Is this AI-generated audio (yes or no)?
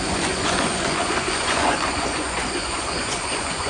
yes